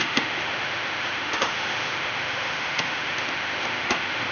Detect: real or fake fake